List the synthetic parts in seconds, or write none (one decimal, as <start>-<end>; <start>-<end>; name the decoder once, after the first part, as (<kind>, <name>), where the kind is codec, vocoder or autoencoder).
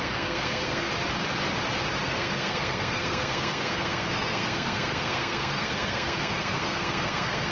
0.0-0.9 (codec, SNAC); 2.0-7.5